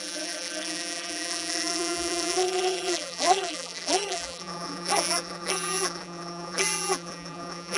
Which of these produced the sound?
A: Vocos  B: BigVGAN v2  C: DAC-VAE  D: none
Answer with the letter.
B